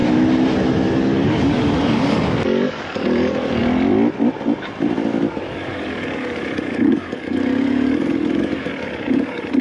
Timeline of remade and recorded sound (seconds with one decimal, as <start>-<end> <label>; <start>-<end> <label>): 0.0-0.9 recorded; 0.9-3.6 remade; 3.6-5.3 recorded; 5.3-9.6 remade